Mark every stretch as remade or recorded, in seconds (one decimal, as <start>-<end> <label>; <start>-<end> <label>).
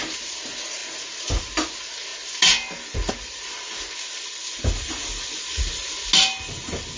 0.0-7.0 recorded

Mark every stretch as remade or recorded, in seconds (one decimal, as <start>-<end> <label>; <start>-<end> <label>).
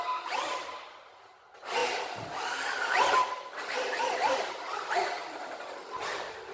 0.0-1.8 recorded; 1.8-3.7 remade; 3.7-5.2 recorded; 5.2-5.7 remade; 5.7-6.5 recorded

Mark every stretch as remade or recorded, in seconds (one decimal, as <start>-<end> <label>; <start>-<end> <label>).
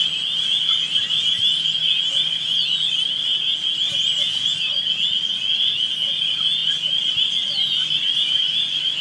0.0-6.6 recorded; 6.6-9.0 remade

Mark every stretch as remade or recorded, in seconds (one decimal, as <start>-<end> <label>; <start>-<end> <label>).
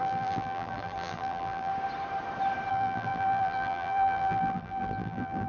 0.0-1.7 remade; 1.7-2.7 recorded; 2.7-5.5 remade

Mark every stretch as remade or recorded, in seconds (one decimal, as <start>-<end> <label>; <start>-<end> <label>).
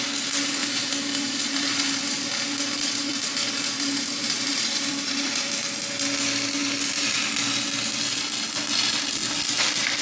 0.0-0.6 recorded; 0.6-5.8 remade; 5.8-10.0 recorded